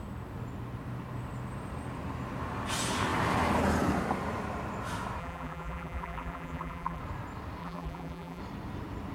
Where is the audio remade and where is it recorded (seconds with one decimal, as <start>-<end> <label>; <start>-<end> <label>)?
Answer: 0.0-5.2 recorded; 5.2-7.0 remade; 7.0-7.6 recorded; 7.6-8.4 remade; 8.4-9.1 recorded